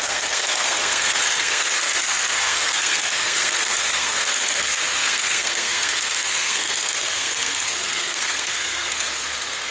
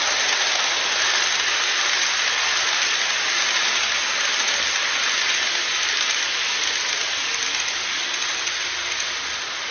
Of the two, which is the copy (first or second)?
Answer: first